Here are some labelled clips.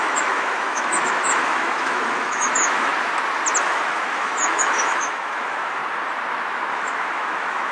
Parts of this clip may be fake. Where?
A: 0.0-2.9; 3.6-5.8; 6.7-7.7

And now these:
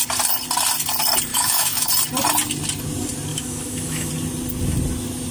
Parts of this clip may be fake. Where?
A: 1.3-1.9; 3.3-4.1

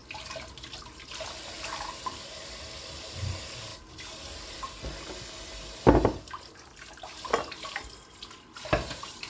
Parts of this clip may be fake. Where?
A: none